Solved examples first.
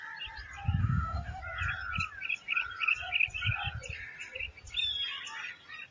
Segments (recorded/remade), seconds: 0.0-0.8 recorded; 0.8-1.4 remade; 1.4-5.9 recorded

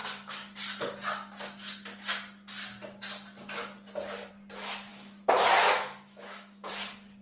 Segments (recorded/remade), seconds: 0.0-4.9 recorded; 4.9-6.7 remade; 6.7-7.2 recorded

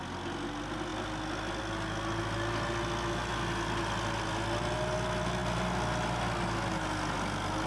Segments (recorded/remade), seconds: 0.0-7.7 recorded

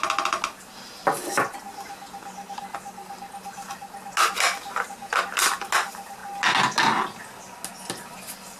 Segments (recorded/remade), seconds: 0.0-8.6 recorded

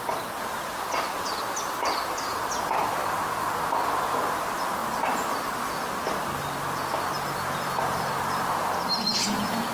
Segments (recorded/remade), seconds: 0.0-9.7 recorded

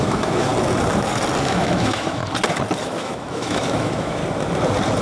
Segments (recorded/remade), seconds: 0.0-0.5 remade; 0.5-1.4 recorded; 1.4-2.2 remade; 2.2-2.8 recorded; 2.8-4.2 remade; 4.2-5.0 recorded

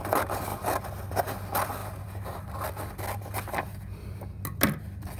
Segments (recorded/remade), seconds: 0.0-5.2 recorded

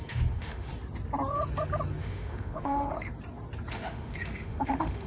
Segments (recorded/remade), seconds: 0.0-0.7 remade; 0.7-2.0 recorded; 2.0-3.1 remade; 3.1-3.7 recorded; 3.7-5.1 remade